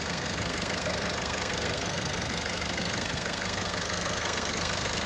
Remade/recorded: remade